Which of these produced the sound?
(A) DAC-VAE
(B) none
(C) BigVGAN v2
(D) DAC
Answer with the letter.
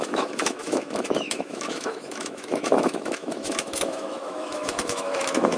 A